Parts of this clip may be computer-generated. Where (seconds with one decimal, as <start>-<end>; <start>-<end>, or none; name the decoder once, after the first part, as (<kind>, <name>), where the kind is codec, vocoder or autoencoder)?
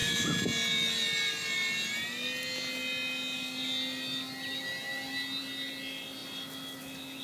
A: none